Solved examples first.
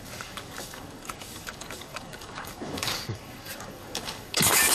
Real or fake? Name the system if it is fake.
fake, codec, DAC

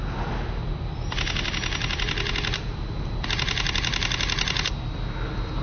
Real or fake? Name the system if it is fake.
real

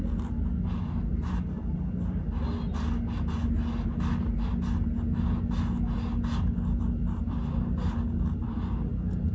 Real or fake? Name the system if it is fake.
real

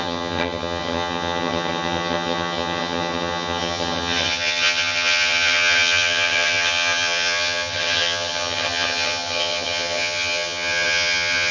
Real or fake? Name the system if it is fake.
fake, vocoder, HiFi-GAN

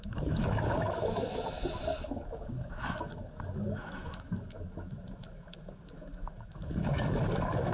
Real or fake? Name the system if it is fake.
fake, autoencoder, DAC-VAE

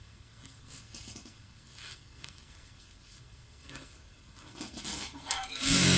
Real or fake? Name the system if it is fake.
fake, codec, SNAC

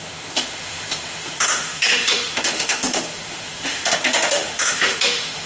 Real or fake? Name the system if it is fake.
fake, autoencoder, DAC-VAE